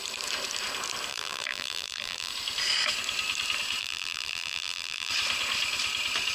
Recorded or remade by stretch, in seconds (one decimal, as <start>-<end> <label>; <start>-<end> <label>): 0.0-1.1 recorded; 1.1-2.3 remade; 2.3-3.8 recorded; 3.8-5.1 remade; 5.1-6.3 recorded